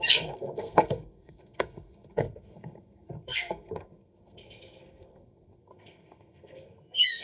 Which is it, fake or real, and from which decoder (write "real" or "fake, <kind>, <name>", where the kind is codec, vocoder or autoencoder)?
fake, codec, SNAC